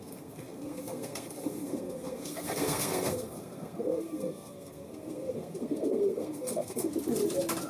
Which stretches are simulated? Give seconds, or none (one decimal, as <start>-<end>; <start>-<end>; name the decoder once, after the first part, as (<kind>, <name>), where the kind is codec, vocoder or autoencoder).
0.0-6.9 (codec, SNAC)